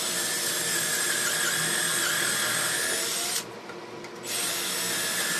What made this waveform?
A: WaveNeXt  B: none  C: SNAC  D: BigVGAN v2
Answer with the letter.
B